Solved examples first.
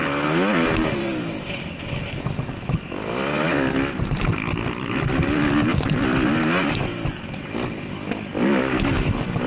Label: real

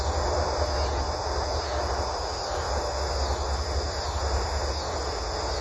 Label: real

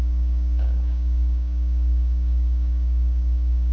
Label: fake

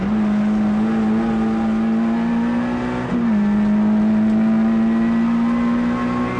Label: real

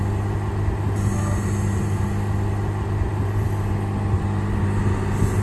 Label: real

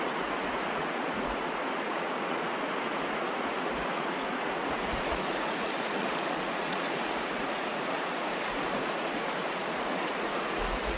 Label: fake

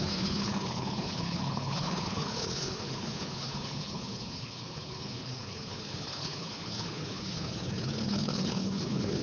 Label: fake